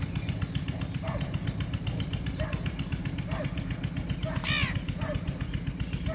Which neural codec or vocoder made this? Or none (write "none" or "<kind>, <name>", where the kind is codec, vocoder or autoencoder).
none